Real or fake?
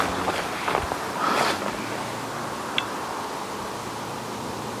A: real